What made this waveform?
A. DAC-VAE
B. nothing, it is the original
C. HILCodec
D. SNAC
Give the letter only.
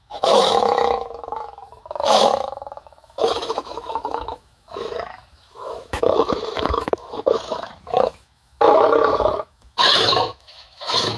A